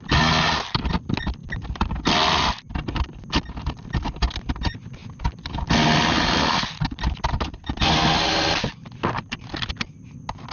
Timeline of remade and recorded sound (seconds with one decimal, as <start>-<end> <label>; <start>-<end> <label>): 0.0-10.5 recorded

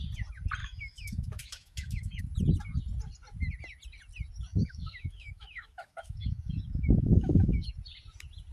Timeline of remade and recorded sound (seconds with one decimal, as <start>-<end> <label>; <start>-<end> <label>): 0.0-0.6 recorded; 0.6-2.2 remade; 2.2-4.5 recorded; 4.5-7.7 remade; 7.7-8.5 recorded

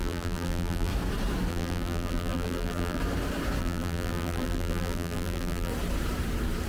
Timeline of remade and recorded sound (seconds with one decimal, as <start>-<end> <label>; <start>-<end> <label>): 0.0-0.9 remade; 0.9-1.5 recorded; 1.5-3.0 remade; 3.0-3.6 recorded; 3.6-5.7 remade; 5.7-6.7 recorded

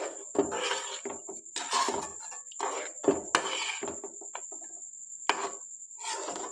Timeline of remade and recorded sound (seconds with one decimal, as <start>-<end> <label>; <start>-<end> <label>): 0.0-6.5 recorded

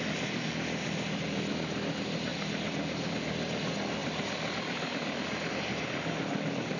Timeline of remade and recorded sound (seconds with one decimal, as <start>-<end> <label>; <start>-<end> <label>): 0.0-6.8 recorded

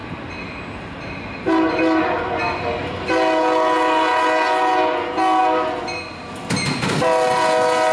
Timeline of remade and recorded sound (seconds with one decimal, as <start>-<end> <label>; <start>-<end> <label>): 0.0-7.9 recorded